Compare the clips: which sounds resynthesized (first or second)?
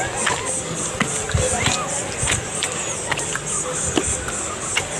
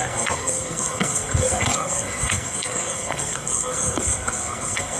second